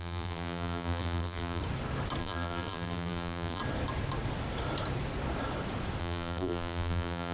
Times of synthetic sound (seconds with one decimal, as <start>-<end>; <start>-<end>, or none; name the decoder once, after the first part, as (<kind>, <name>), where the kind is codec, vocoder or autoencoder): 0.0-1.6 (vocoder, BigVGAN v2); 2.2-3.6; 6.0-7.3